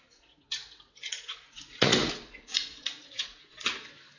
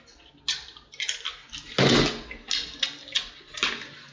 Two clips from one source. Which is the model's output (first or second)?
first